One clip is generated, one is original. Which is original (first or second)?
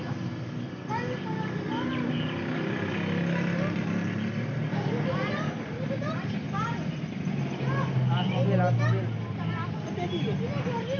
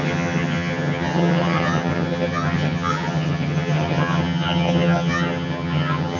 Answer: first